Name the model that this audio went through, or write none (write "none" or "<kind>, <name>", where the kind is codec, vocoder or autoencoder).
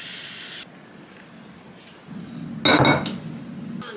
none